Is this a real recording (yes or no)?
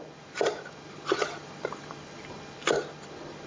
no